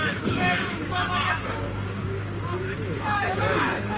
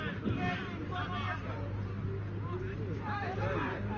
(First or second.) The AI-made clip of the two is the first